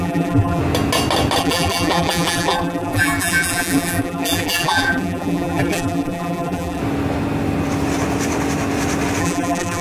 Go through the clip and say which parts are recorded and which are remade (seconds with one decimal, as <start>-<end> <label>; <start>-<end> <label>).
0.0-0.6 remade; 0.6-1.4 recorded; 1.4-6.8 remade; 6.8-9.2 recorded; 9.2-9.8 remade